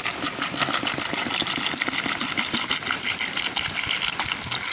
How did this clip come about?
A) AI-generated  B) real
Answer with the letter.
B